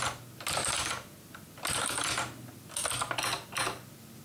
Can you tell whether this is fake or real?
real